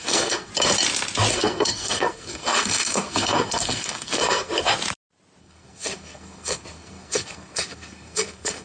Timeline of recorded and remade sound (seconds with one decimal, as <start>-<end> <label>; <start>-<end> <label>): 0.0-0.5 remade; 0.5-1.3 recorded; 1.3-4.5 remade; 4.5-5.4 recorded; 5.4-8.6 remade